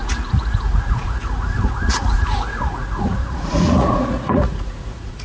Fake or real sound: fake